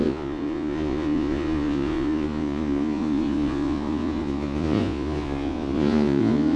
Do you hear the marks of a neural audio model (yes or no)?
yes